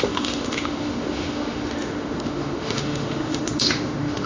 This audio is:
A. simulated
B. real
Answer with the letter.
A